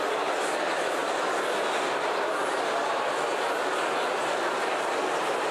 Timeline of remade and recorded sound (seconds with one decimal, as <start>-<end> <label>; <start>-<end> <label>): 0.0-1.0 recorded; 1.0-3.0 remade; 3.0-4.2 recorded; 4.2-5.0 remade; 5.0-5.5 recorded